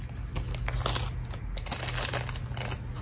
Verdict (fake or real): real